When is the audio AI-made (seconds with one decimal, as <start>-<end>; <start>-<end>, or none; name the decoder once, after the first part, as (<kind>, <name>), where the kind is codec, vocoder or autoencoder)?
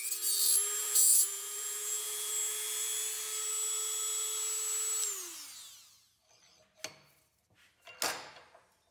0.8-2.3 (vocoder, Vocos)